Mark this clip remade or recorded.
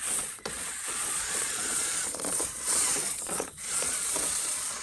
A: remade